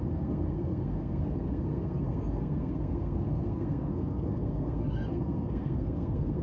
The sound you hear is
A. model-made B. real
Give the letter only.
A